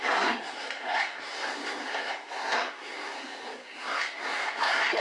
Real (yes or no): no